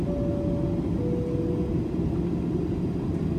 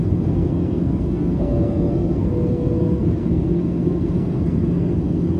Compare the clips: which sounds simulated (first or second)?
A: second